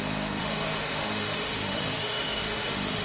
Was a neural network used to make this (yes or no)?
yes